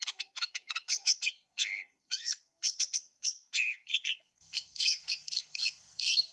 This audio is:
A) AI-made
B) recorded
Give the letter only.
A